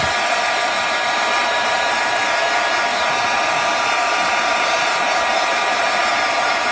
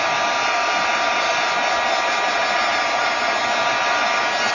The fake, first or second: first